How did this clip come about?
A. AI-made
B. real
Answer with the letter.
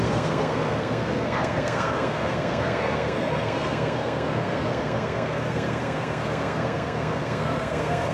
A